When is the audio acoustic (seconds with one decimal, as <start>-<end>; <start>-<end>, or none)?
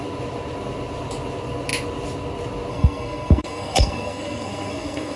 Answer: 0.0-2.7